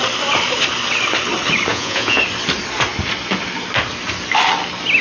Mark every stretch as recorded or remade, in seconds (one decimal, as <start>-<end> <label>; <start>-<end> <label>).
0.0-1.7 recorded; 1.7-2.2 remade; 2.2-5.0 recorded